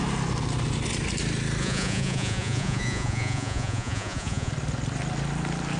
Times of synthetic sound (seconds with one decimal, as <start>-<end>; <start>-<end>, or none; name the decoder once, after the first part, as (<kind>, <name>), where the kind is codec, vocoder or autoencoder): 1.6-4.5 (vocoder, Vocos)